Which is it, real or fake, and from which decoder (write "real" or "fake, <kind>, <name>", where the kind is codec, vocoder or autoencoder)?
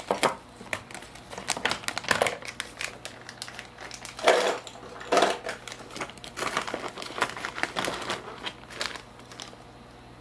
real